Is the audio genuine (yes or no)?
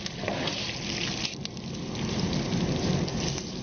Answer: yes